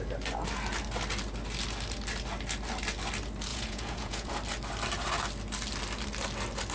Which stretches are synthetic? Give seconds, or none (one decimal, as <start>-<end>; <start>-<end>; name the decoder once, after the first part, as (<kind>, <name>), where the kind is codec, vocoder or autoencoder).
3.5-4.3 (vocoder, Vocos)

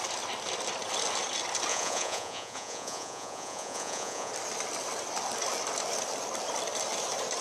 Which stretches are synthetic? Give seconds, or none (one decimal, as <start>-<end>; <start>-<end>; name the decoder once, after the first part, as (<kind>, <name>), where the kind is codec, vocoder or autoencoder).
1.7-4.3 (vocoder, Vocos)

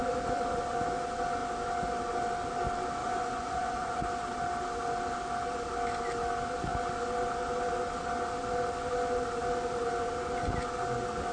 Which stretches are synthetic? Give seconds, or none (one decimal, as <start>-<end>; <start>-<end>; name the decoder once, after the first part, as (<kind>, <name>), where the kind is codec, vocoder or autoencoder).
3.0-4.0 (vocoder, Vocos)

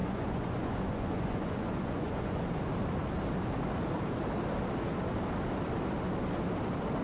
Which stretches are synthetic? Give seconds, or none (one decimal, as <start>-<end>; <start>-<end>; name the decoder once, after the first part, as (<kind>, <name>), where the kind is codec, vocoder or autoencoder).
0.0-2.4 (vocoder, Vocos)

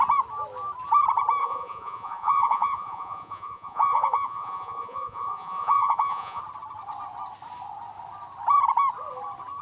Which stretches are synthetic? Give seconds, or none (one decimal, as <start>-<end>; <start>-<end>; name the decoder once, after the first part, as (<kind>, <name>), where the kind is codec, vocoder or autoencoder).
1.4-6.4 (vocoder, Vocos)

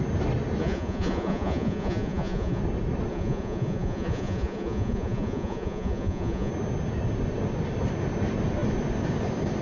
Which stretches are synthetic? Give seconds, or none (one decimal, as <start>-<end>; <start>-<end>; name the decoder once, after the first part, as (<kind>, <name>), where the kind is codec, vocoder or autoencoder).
0.6-2.6 (vocoder, Vocos); 3.1-6.5

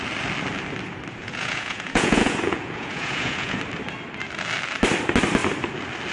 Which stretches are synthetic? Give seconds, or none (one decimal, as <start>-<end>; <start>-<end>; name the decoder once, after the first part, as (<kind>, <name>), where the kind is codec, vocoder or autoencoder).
1.2-3.6 (vocoder, Vocos)